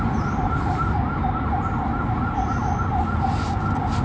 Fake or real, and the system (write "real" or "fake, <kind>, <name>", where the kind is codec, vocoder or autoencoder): real